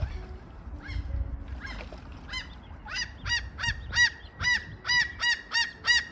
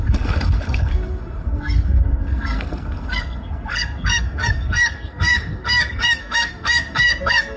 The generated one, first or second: second